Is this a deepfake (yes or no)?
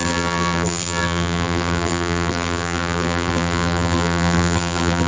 yes